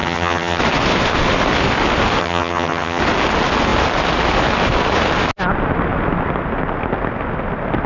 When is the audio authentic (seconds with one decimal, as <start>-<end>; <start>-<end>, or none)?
0.6-2.2; 3.0-7.9